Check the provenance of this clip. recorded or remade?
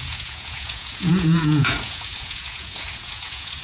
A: remade